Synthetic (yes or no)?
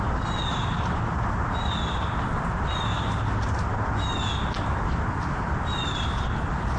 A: no